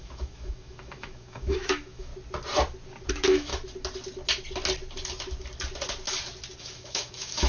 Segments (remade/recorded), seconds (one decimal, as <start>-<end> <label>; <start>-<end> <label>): 0.0-2.1 remade; 2.1-3.1 recorded; 3.1-3.5 remade; 3.5-6.6 recorded; 6.6-7.5 remade